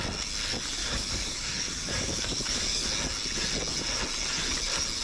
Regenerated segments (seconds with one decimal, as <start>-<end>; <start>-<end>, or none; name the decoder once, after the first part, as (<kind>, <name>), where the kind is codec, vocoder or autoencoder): 0.8-2.9 (codec, DAC)

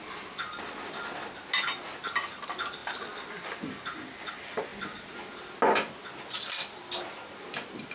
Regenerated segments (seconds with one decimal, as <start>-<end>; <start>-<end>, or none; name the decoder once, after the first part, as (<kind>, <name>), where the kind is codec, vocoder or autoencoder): none

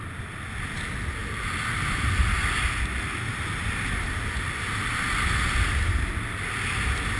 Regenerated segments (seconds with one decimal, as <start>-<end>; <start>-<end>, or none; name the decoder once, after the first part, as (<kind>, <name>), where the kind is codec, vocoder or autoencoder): none

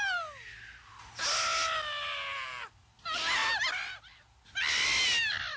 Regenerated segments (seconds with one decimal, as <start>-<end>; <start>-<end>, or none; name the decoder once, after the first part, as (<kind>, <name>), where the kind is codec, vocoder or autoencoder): none

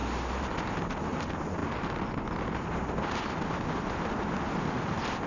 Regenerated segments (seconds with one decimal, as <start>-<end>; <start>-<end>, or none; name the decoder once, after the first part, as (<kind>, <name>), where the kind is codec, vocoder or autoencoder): none

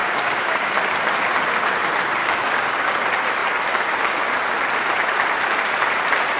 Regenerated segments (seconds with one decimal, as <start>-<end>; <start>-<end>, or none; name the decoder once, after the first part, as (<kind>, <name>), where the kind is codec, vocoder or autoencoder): 0.0-0.7 (codec, DAC); 2.2-2.9

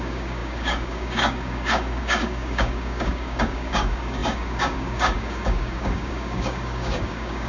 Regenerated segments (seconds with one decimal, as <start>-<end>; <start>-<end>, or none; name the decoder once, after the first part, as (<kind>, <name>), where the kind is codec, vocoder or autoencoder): 0.0-7.5 (codec, DAC)